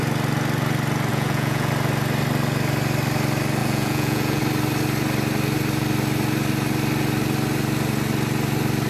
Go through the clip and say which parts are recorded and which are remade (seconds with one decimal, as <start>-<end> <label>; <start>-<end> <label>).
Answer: 0.0-1.1 recorded; 1.1-1.7 remade; 1.7-3.6 recorded; 3.6-4.4 remade; 4.4-8.9 recorded